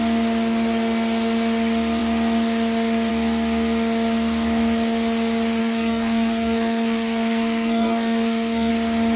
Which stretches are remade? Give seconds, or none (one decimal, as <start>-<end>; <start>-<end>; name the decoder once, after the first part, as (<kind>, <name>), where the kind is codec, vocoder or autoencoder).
5.6-8.7 (codec, SNAC)